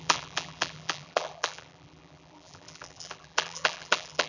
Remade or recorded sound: remade